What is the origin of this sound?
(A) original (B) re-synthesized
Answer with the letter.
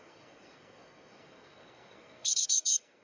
B